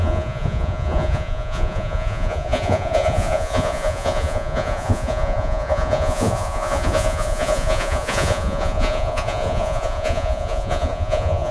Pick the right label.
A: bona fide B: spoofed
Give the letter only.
B